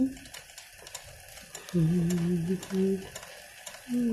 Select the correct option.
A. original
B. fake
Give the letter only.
A